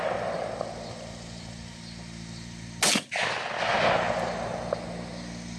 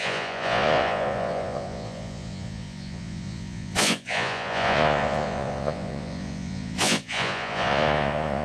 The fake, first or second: second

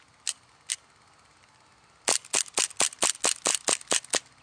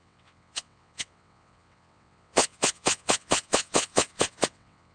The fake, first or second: second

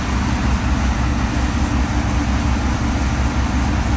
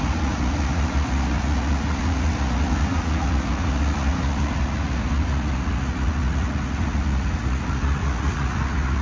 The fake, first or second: second